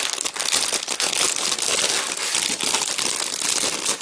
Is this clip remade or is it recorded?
recorded